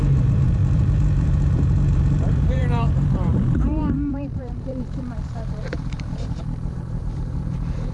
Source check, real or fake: fake